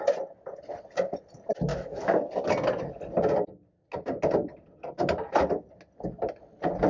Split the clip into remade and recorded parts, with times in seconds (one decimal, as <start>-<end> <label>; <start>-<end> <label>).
0.0-1.7 recorded; 1.7-2.3 remade; 2.3-6.9 recorded